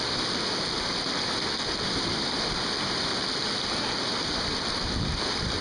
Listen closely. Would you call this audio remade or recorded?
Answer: recorded